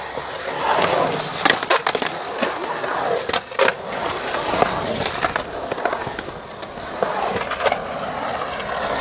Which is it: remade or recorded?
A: recorded